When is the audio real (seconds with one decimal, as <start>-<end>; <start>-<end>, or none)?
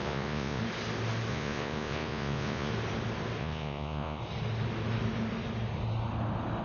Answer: 0.6-1.3; 2.7-3.4; 4.2-6.6